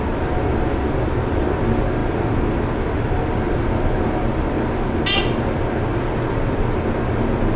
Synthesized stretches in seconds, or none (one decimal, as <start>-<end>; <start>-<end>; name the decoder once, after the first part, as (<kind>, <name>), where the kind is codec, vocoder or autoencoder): none